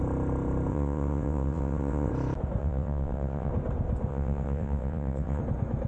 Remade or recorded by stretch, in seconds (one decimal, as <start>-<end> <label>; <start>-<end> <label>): 0.0-0.7 recorded; 0.7-2.1 remade; 2.1-2.6 recorded; 2.6-3.5 remade; 3.5-4.1 recorded; 4.1-5.4 remade; 5.4-5.9 recorded